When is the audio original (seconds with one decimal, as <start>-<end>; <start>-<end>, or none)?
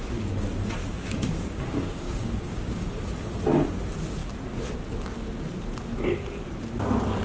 0.0-0.8; 2.9-7.2